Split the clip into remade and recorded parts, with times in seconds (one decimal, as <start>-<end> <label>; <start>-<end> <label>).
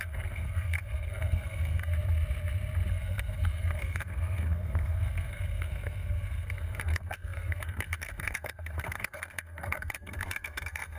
0.0-1.9 remade; 1.9-2.9 recorded; 2.9-11.0 remade